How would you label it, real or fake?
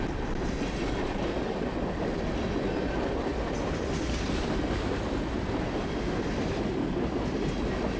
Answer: real